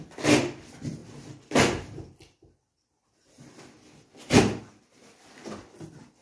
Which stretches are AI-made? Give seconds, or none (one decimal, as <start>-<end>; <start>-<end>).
none